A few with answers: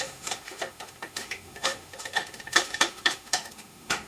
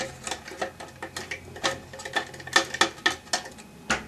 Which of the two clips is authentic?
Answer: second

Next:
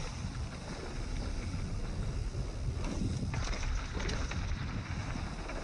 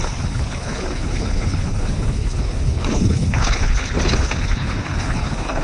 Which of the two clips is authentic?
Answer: first